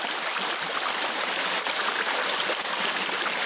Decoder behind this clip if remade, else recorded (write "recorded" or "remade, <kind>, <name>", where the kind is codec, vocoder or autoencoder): recorded